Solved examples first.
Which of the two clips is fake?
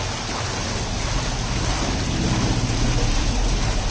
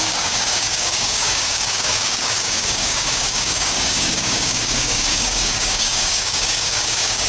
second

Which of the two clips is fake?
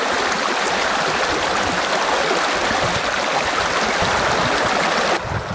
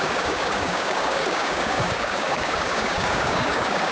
second